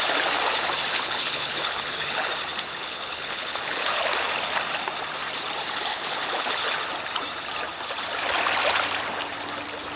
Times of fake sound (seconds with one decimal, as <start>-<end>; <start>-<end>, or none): 0.9-2.3; 2.7-4.0; 5.9-6.5